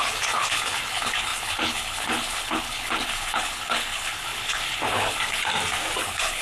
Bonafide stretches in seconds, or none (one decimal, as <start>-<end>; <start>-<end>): 5.5-6.0